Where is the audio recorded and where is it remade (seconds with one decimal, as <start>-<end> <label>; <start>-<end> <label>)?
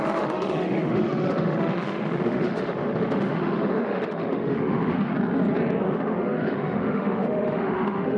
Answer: 0.0-5.1 remade; 5.1-5.8 recorded; 5.8-8.2 remade